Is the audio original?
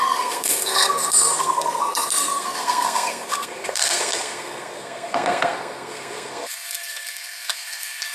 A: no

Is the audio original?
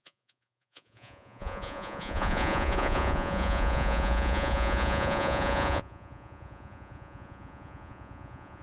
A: no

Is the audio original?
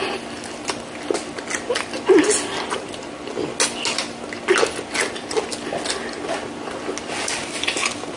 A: yes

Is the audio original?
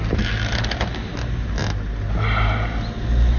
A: yes